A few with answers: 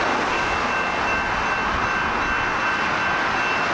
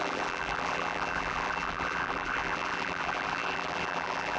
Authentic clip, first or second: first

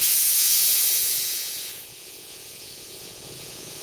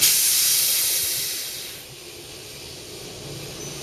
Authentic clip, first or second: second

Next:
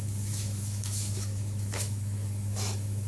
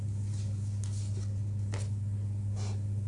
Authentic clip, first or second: second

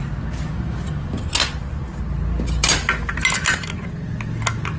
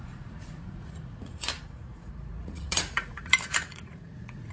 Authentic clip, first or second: first